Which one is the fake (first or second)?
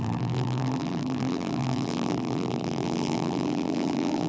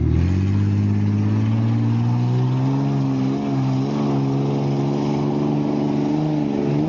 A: first